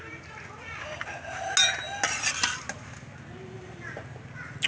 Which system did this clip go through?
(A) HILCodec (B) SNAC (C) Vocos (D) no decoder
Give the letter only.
D